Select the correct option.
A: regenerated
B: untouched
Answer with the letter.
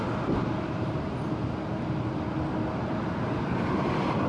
B